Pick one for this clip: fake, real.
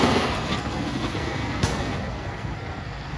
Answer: fake